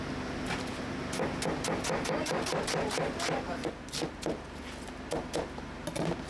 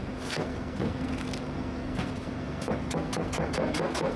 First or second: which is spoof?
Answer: second